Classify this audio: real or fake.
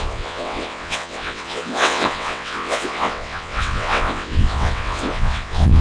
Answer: fake